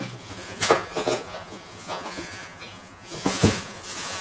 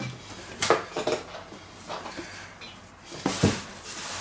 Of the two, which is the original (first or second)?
second